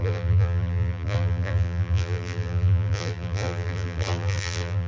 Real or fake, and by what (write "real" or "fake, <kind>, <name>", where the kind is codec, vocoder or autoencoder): fake, vocoder, BigVGAN v2